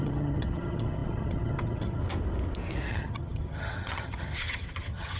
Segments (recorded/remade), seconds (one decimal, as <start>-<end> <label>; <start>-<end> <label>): 0.0-2.0 remade; 2.0-2.9 recorded; 2.9-5.2 remade